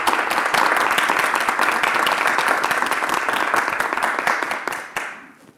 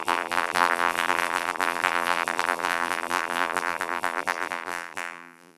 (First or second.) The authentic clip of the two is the first